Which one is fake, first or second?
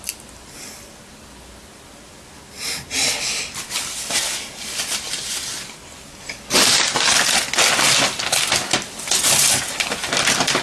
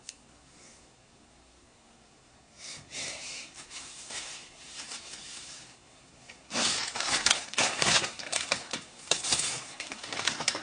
second